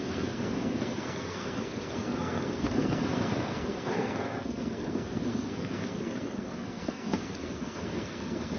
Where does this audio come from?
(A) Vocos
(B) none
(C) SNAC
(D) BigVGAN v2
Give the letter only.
C